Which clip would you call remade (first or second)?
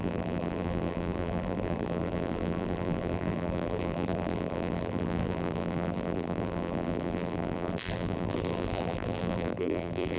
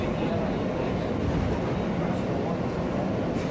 first